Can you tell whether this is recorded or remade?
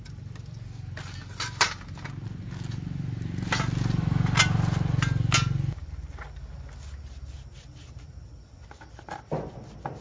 recorded